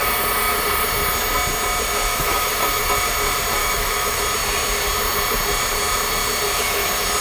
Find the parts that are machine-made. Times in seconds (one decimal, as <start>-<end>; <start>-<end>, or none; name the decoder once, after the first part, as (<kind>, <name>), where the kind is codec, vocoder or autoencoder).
2.1-2.8 (autoencoder, DAC-VAE); 3.6-4.2